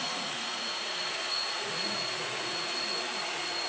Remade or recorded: remade